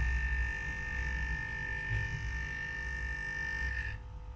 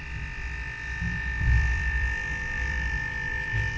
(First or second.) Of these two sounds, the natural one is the first